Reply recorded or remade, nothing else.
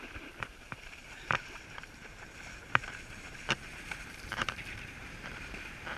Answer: remade